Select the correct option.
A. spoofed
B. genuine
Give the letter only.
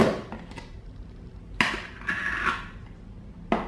B